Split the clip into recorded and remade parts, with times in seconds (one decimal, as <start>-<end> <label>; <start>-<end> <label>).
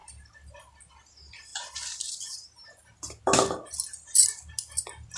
0.0-1.1 remade; 1.1-1.5 recorded; 1.5-3.2 remade; 3.2-5.2 recorded